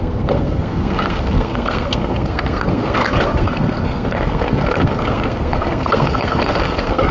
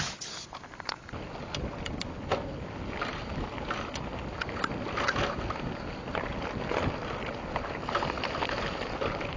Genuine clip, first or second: second